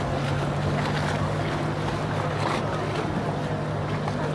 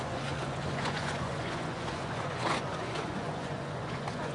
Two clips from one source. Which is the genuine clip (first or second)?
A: first